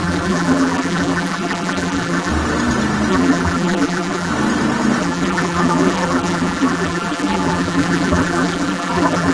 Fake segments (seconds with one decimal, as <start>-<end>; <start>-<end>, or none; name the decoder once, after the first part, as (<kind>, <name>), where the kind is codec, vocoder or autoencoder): 0.0-2.3 (vocoder, BigVGAN v2); 3.1-4.3; 5.0-9.3